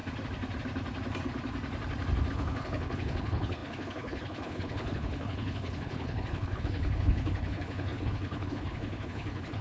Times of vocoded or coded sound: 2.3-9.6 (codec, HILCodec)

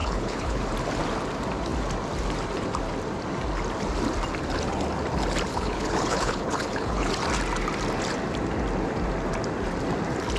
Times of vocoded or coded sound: 0.0-0.6 (codec, HILCodec); 5.5-7.1